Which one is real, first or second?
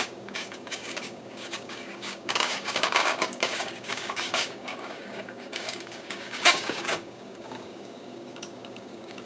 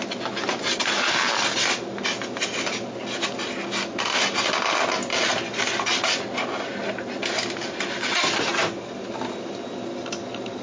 second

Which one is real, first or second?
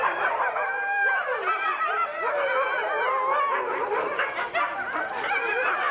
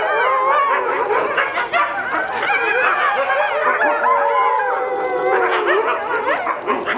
second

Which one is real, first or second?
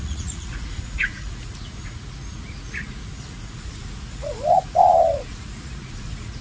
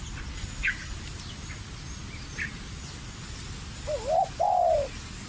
second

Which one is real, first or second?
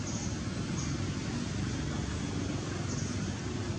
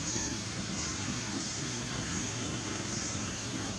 first